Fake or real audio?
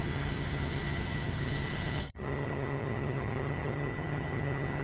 fake